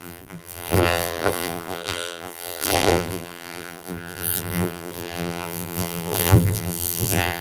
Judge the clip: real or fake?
fake